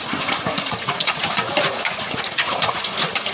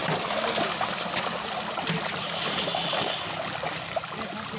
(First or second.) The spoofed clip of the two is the first